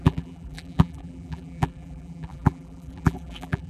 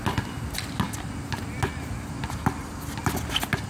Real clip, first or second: second